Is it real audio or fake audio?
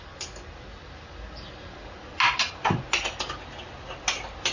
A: real